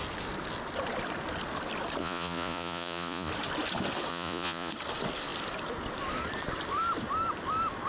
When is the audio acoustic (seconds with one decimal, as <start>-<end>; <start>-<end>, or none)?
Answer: 0.0-2.0; 3.3-4.1; 4.7-7.9